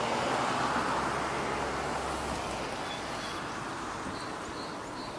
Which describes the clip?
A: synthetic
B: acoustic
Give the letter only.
B